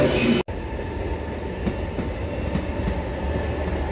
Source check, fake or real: real